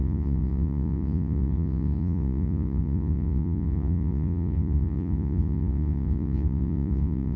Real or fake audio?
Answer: fake